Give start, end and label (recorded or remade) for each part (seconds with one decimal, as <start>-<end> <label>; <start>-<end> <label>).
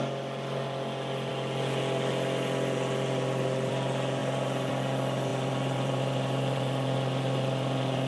0.0-5.3 recorded; 5.3-8.1 remade